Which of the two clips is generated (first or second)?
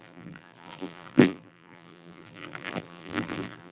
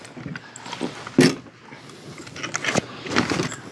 first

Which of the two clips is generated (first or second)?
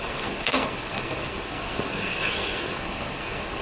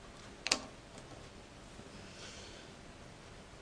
first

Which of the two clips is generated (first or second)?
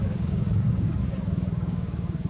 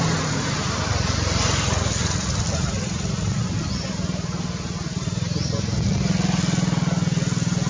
first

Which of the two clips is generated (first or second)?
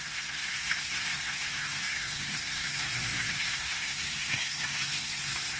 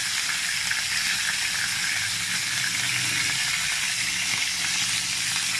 first